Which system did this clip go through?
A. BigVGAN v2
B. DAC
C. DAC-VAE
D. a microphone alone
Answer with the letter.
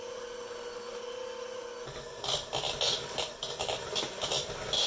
D